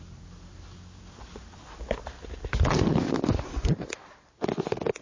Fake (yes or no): no